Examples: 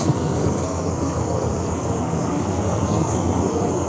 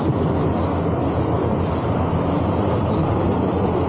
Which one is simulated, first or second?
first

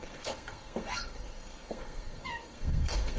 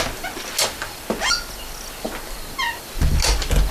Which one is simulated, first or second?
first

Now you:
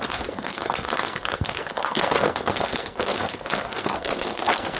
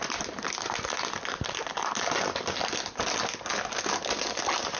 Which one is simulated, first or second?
first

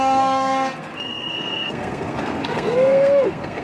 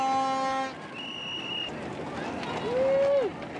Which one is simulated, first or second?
first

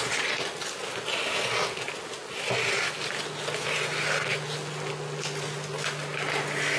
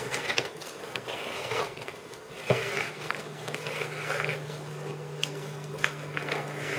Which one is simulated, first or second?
second